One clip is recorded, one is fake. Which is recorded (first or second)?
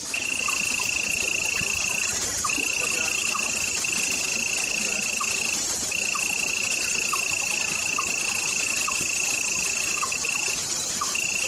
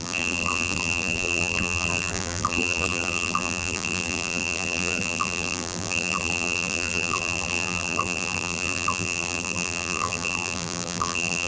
first